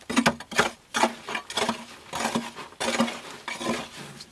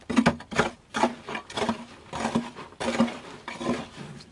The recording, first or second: first